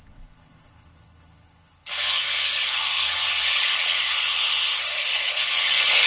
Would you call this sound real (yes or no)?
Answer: no